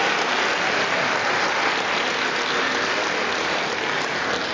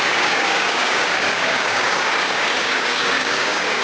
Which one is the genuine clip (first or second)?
first